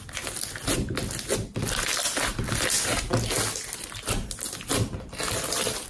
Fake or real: real